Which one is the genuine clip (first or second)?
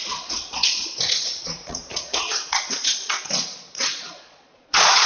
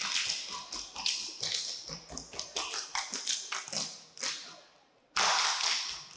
second